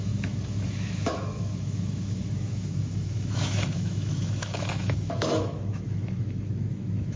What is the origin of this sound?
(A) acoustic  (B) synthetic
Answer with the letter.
B